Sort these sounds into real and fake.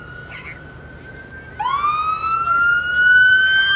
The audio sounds real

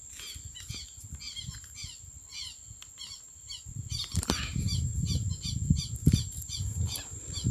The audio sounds real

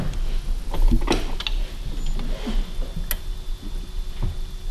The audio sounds real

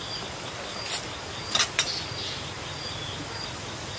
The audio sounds real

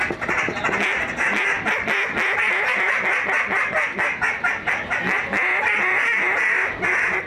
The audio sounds real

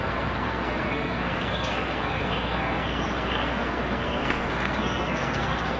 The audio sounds fake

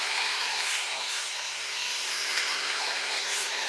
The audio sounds fake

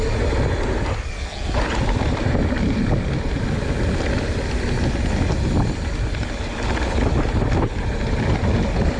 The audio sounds real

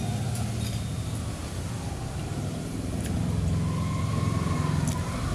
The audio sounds real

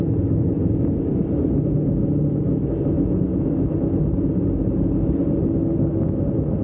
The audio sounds real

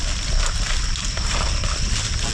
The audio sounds real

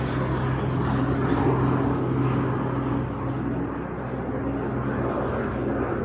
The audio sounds real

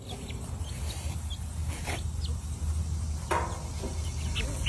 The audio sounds real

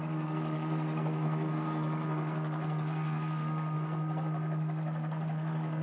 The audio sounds fake